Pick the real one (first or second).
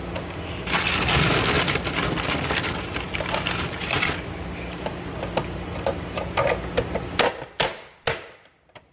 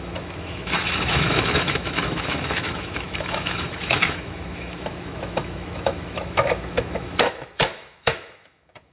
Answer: first